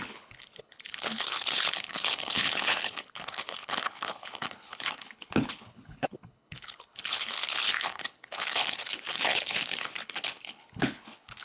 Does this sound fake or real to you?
fake